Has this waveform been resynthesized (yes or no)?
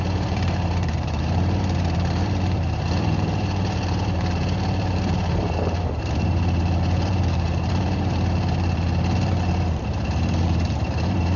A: yes